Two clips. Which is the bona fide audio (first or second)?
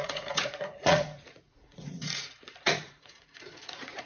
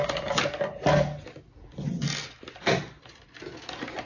second